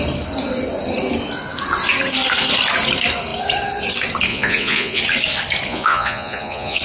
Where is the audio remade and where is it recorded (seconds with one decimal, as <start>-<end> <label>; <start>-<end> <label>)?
0.0-4.3 recorded; 4.3-5.0 remade; 5.0-5.7 recorded; 5.7-6.8 remade